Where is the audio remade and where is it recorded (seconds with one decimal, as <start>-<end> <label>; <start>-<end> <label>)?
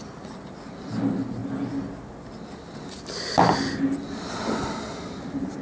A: 0.0-5.6 recorded